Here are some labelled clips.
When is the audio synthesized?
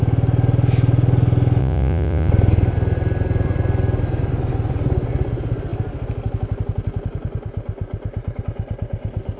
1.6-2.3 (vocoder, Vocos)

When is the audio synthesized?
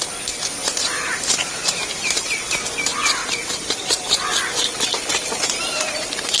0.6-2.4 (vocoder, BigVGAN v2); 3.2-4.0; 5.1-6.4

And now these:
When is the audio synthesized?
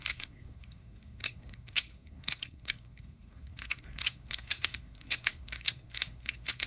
0.0-6.7 (codec, SNAC)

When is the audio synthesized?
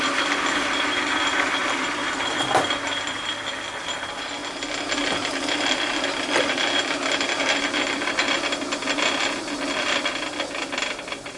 none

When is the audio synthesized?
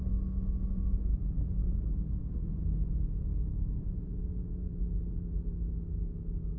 none